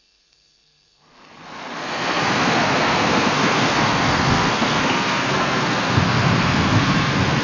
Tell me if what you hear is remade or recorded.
remade